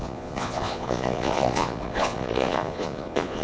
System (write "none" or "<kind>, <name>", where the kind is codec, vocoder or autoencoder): vocoder, Vocos